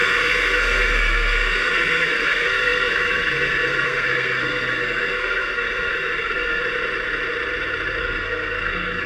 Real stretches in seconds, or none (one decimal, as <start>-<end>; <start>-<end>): 6.6-8.0